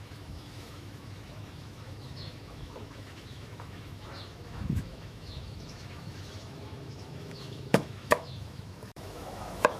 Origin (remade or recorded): remade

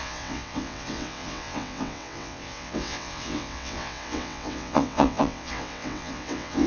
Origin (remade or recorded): remade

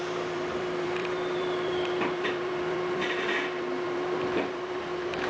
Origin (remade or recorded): remade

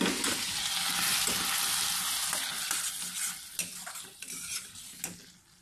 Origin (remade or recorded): recorded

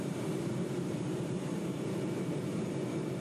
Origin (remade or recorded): remade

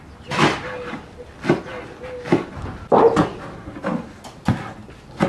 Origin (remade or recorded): recorded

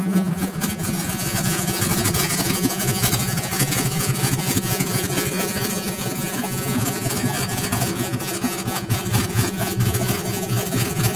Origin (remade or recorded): remade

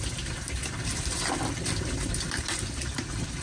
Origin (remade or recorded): recorded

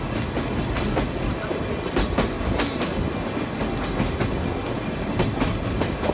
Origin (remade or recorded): recorded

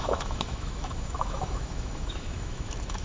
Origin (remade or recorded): remade